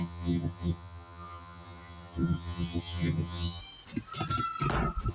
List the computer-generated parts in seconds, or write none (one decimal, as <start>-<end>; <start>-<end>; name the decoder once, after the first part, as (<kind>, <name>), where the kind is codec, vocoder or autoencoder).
0.0-3.6 (vocoder, HiFi-GAN)